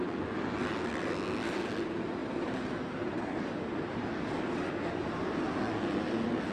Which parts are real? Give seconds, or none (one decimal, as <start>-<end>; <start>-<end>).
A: 0.0-2.2; 5.4-6.5